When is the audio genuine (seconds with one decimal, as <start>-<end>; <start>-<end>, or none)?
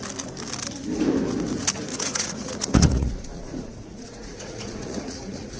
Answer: 0.0-1.9